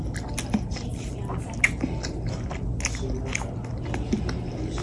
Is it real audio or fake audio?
real